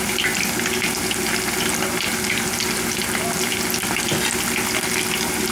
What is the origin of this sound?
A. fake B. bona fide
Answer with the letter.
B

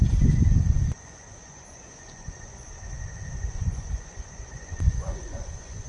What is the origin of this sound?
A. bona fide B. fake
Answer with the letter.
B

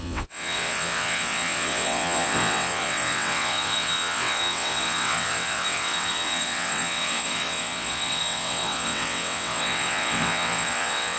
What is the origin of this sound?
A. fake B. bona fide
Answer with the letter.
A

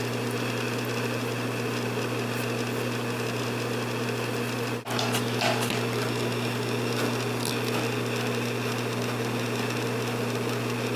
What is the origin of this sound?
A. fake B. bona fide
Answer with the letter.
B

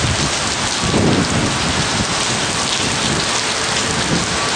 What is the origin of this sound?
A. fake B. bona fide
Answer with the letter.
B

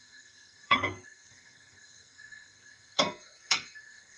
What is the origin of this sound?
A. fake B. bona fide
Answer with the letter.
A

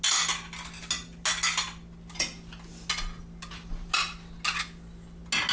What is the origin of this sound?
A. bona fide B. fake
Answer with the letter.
A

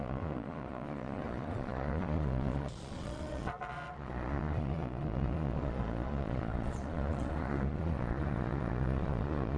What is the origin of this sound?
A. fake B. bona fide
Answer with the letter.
A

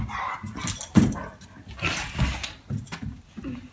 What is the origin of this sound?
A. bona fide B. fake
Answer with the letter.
A